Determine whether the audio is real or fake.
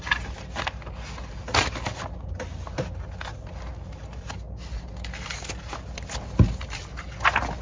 real